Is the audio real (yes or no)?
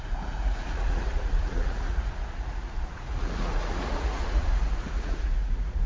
no